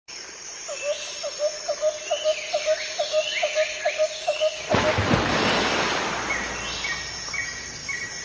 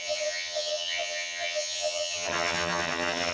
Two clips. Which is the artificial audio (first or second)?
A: second